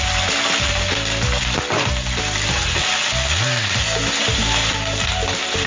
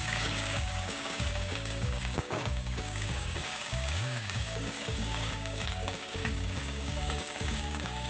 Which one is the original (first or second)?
first